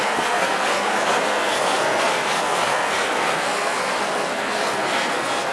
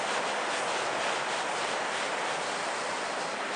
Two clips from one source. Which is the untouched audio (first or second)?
second